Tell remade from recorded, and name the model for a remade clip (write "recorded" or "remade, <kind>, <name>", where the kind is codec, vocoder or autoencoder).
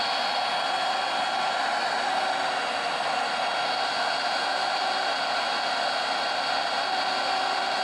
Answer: recorded